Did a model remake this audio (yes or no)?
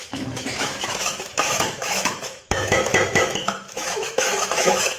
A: yes